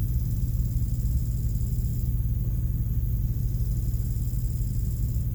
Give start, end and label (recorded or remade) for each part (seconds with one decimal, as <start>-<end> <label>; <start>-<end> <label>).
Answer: 0.0-5.3 recorded